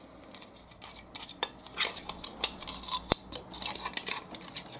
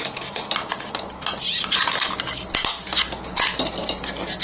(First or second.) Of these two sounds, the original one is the second